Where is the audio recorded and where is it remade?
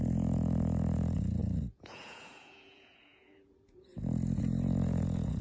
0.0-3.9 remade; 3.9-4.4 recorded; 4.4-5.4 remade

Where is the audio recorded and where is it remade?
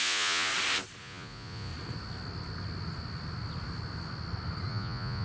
0.0-0.5 remade; 0.5-1.0 recorded; 1.0-1.7 remade; 1.7-4.7 recorded; 4.7-5.2 remade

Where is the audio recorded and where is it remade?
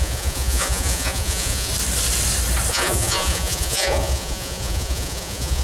0.0-1.7 remade; 1.7-2.7 recorded; 2.7-5.6 remade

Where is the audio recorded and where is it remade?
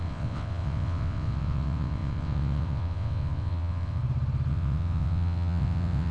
0.0-4.0 remade; 4.0-4.5 recorded; 4.5-6.1 remade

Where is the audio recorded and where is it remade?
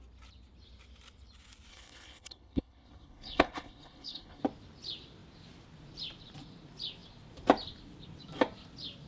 0.0-1.7 recorded; 1.7-4.4 remade; 4.4-9.1 recorded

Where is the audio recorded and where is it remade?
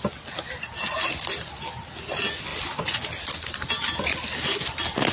0.0-5.1 recorded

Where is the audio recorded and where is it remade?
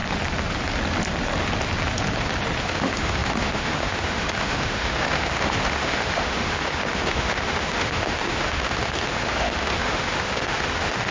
0.0-2.6 recorded; 2.6-11.1 remade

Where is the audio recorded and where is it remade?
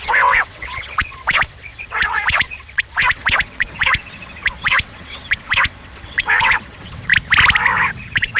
0.0-7.1 remade; 7.1-8.0 recorded; 8.0-8.4 remade